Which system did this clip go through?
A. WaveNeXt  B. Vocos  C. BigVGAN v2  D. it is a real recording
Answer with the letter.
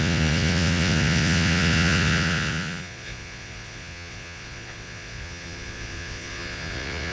B